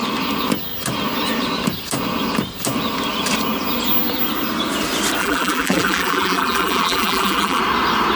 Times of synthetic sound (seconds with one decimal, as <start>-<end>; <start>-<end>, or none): 5.2-7.6